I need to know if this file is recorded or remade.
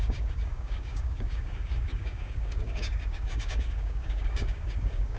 remade